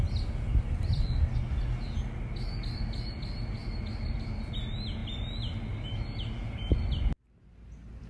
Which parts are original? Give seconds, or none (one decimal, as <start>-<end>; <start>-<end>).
0.0-8.1

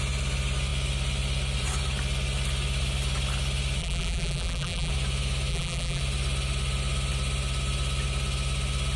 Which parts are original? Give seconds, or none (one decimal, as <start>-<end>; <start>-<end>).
0.0-3.8; 4.9-5.5; 6.0-9.0

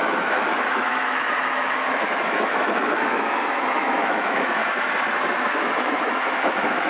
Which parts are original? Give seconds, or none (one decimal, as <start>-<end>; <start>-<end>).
4.6-5.4

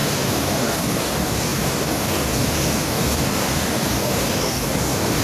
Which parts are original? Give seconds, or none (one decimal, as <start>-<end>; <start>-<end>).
none

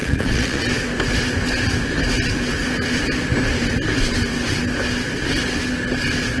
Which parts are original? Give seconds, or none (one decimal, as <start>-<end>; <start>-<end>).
0.6-6.4